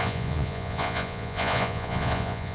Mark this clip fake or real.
fake